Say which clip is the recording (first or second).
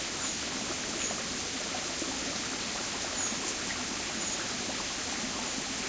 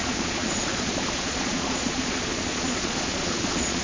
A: first